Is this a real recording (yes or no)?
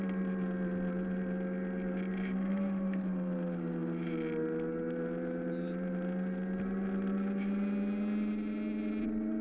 yes